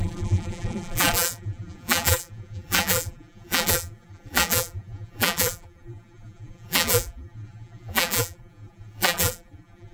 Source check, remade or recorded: remade